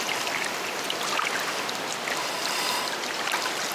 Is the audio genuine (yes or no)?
yes